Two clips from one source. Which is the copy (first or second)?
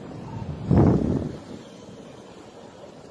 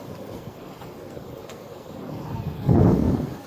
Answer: second